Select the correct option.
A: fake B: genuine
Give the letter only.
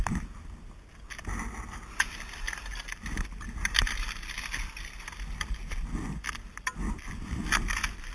B